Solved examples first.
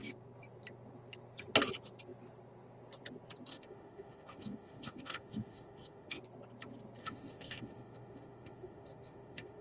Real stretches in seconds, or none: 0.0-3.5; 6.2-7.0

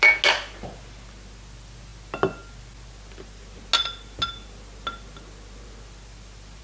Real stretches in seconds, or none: 0.0-6.6

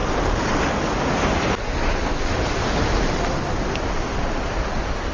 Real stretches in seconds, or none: 0.0-5.1

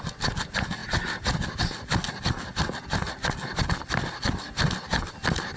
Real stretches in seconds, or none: 0.0-5.6

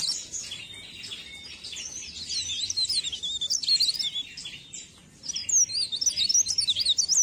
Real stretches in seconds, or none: 0.0-7.2